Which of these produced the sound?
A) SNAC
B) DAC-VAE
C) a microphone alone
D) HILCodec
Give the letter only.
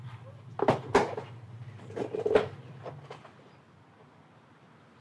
C